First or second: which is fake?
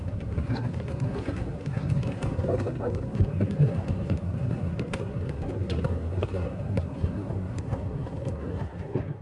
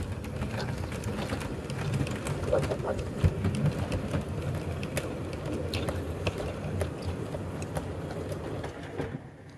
first